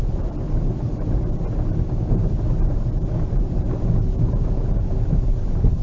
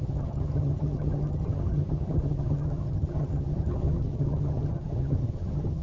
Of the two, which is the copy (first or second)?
second